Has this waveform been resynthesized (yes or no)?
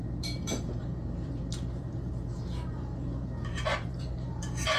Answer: yes